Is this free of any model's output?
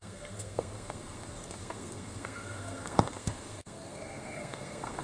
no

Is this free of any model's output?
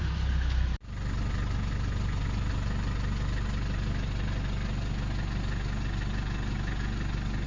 yes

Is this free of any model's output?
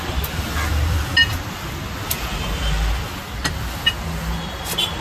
yes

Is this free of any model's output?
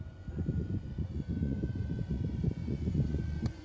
no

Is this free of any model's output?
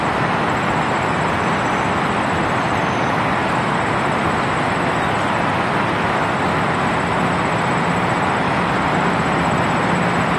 yes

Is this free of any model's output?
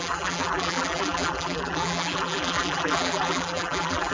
no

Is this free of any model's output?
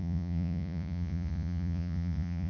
no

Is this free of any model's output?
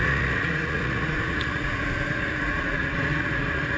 no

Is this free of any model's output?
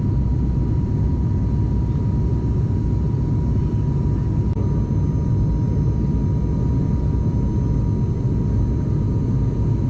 yes